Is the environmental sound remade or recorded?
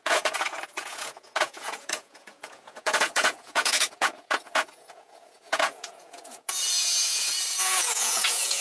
remade